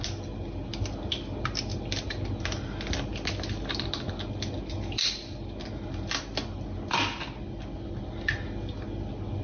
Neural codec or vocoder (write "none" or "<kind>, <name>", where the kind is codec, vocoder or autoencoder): none